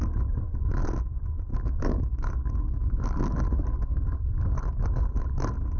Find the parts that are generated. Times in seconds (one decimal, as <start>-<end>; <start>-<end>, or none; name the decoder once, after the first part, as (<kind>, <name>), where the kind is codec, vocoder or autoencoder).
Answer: 1.5-5.0 (codec, DAC)